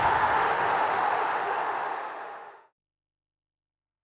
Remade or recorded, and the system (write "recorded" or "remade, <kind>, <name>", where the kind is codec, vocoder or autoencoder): remade, autoencoder, DAC-VAE